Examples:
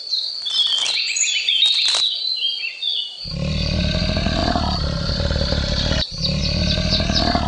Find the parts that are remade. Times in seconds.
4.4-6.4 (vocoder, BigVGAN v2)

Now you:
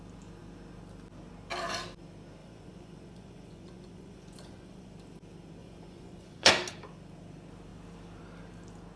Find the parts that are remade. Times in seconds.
2.4-4.9 (vocoder, Vocos); 5.6-6.5

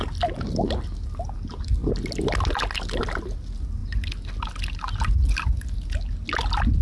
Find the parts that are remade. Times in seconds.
none

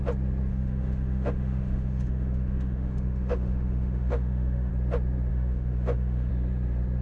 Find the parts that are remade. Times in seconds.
0.5-4.7 (autoencoder, DAC-VAE); 5.3-6.3

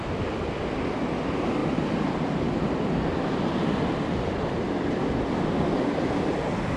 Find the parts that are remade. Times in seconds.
none

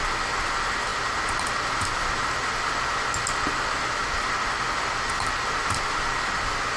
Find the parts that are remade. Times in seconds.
0.9-2.8 (vocoder, BigVGAN v2); 4.0-6.8